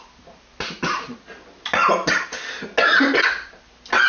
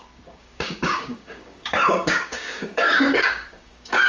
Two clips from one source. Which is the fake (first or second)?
second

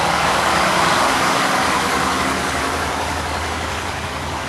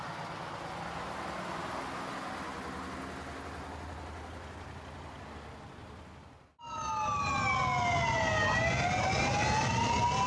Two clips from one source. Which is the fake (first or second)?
first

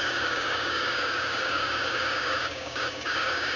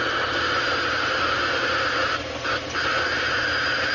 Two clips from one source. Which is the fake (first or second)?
first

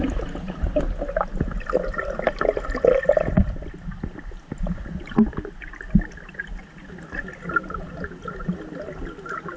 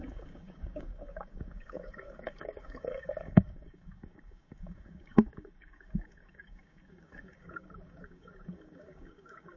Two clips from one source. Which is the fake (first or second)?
second